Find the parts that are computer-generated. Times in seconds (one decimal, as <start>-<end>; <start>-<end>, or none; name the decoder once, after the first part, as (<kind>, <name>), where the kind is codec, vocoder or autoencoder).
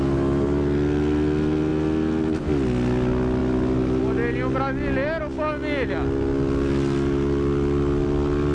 none